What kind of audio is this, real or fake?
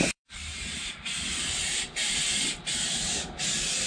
fake